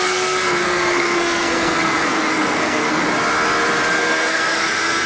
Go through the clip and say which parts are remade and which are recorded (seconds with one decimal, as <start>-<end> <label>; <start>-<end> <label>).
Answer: 0.0-3.0 remade; 3.0-3.9 recorded; 3.9-5.1 remade